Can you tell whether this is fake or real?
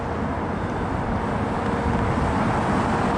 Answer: real